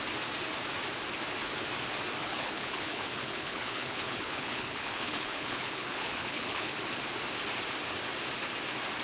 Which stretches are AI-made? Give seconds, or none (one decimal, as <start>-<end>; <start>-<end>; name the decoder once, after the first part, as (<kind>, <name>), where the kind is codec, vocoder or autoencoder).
2.2-6.7 (codec, HILCodec)